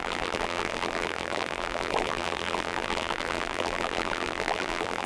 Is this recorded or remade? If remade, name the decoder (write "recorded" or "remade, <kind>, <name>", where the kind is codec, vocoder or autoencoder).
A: remade, vocoder, BigVGAN v2